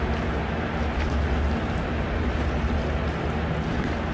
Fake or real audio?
real